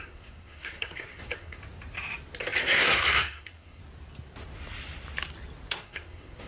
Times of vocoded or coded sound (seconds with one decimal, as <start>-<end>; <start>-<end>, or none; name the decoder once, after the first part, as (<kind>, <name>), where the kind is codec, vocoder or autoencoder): 0.0-1.6 (codec, SNAC); 2.6-3.8; 5.7-6.5